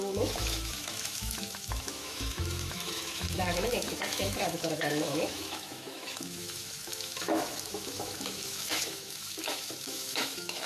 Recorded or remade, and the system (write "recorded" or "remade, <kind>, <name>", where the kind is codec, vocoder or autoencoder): remade, autoencoder, DAC-VAE